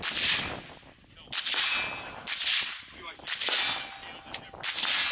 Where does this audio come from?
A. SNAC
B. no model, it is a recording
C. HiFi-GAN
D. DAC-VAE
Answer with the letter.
B